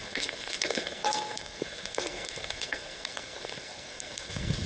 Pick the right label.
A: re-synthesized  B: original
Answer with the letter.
A